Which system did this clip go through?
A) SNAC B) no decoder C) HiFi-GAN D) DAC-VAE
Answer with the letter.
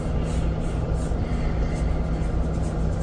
B